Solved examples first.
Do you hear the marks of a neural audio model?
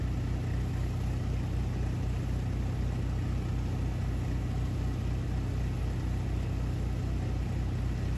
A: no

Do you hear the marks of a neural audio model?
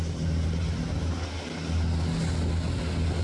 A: no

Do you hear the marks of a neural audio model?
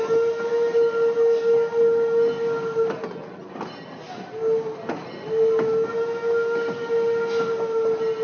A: no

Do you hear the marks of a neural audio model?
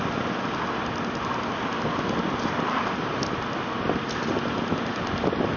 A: no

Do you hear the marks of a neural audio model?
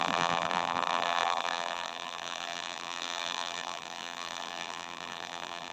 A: yes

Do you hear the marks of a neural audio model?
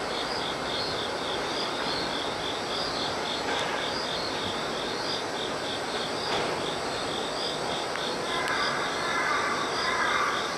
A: no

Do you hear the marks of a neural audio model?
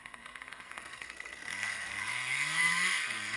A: yes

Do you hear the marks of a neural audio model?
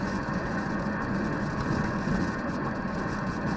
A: yes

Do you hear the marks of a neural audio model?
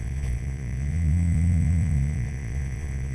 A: yes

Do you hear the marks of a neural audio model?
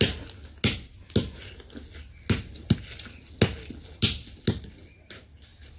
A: no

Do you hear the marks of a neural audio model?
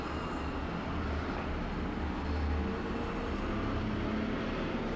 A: no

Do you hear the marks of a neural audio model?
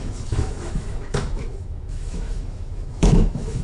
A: yes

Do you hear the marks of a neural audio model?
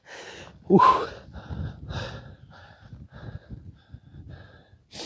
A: no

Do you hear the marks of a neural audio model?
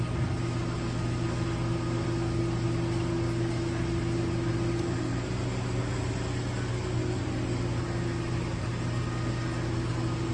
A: no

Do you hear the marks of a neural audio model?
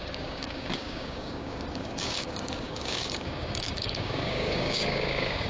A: yes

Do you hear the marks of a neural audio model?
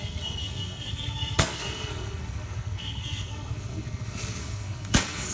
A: yes